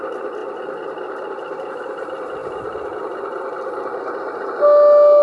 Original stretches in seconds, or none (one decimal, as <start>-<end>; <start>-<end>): 0.0-5.2

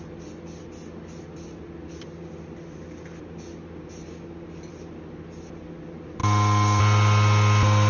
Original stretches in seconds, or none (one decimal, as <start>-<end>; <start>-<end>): 0.0-7.9

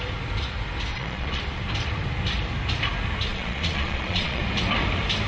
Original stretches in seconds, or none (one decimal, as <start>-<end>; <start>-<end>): 0.0-0.9; 1.4-3.3; 4.4-5.3

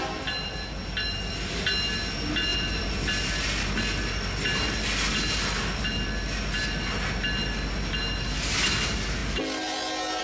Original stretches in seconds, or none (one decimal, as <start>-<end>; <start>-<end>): 0.0-10.2

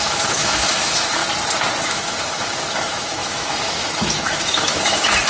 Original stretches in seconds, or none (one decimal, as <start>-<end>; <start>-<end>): 1.2-1.8

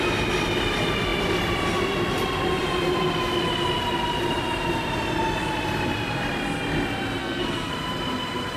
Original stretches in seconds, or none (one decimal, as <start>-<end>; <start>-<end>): 0.0-7.2; 7.7-8.6